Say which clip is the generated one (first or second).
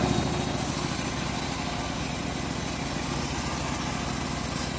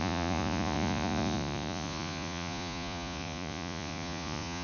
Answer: second